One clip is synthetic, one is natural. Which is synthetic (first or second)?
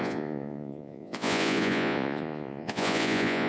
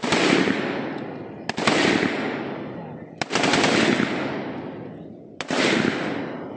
first